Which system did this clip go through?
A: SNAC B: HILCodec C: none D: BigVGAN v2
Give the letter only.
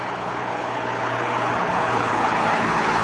B